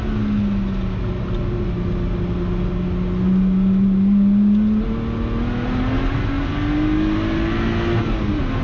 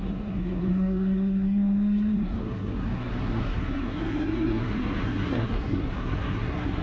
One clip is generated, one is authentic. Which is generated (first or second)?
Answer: second